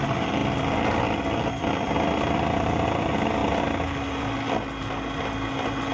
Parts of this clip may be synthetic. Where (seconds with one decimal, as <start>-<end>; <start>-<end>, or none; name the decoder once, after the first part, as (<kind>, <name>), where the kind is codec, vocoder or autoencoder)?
0.4-1.6 (vocoder, BigVGAN v2)